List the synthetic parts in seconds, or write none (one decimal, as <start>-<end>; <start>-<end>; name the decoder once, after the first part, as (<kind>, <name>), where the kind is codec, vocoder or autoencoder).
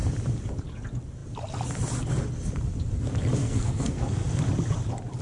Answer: 3.4-4.4 (codec, SNAC)